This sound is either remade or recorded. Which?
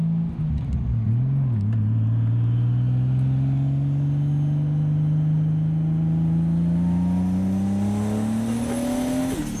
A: recorded